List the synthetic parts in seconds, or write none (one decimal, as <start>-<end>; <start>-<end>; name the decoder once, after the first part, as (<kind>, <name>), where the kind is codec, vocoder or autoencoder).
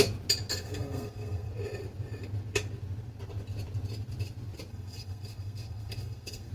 0.5-1.5 (codec, SNAC); 4.7-6.5